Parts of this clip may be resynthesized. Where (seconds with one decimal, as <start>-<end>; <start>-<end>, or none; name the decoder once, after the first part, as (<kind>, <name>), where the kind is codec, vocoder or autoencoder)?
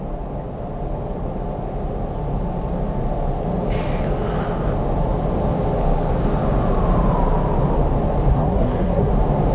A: 8.3-9.1 (codec, SNAC)